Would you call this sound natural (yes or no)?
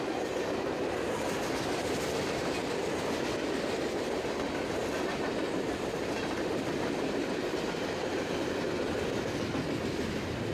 yes